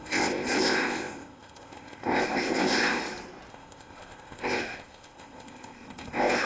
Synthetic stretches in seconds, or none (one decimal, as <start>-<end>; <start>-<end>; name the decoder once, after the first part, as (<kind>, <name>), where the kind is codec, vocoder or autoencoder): 0.0-3.0 (codec, ZipCodec); 3.5-6.5